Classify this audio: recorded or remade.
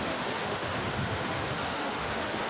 remade